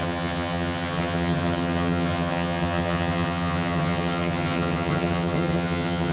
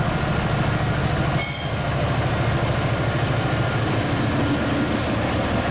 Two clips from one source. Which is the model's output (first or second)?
first